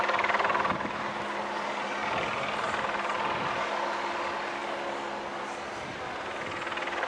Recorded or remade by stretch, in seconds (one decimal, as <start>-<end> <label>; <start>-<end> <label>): 0.0-7.1 recorded